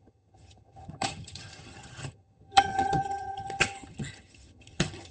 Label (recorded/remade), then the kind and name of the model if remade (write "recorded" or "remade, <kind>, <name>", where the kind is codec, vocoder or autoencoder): remade, vocoder, HiFi-GAN